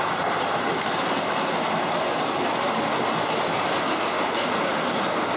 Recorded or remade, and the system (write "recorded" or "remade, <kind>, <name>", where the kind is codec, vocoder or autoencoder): recorded